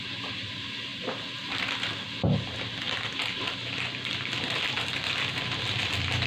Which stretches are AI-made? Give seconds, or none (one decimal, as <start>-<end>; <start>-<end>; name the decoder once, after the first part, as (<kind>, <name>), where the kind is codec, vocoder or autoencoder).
none